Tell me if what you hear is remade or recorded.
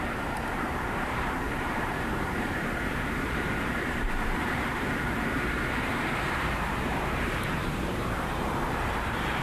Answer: remade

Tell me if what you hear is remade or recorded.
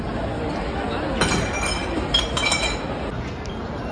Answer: recorded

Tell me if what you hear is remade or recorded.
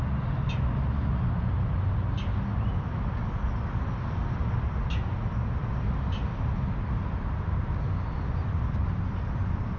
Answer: recorded